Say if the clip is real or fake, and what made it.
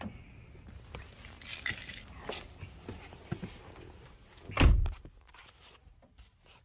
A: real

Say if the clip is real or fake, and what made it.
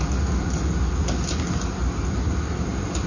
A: real